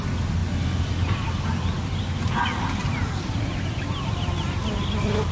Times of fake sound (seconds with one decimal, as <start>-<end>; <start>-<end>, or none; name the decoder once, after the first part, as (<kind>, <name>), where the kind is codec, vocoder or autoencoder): none